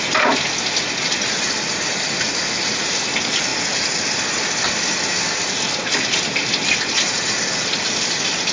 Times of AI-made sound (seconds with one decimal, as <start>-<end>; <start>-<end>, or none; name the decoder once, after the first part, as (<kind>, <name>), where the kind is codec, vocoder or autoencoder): 1.7-2.4 (vocoder, BigVGAN v2)